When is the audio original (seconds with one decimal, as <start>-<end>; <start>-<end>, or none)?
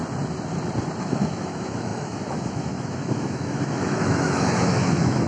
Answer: 0.0-1.0